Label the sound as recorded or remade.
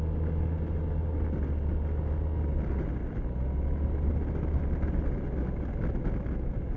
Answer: recorded